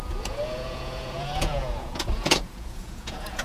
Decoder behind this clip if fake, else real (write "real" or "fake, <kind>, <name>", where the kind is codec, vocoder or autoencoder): fake, vocoder, Vocos